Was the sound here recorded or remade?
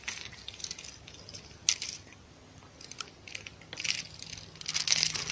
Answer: recorded